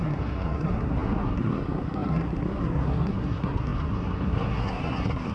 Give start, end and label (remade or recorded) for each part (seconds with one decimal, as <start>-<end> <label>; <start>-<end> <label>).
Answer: 0.0-5.3 remade